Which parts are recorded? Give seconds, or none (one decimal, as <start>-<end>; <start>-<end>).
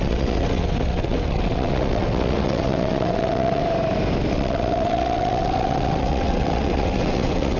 3.6-4.3